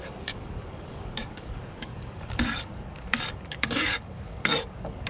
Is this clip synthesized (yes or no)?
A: yes